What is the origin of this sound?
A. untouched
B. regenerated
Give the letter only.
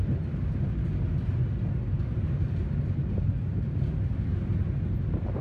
A